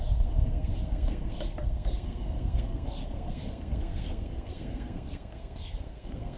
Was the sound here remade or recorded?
remade